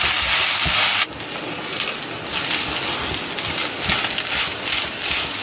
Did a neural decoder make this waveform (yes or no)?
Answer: no